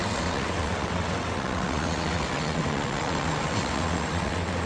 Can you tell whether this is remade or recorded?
remade